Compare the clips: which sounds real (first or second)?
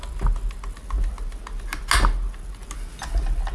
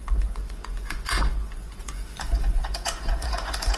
first